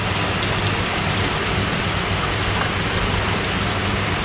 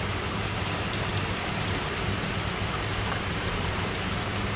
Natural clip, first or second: first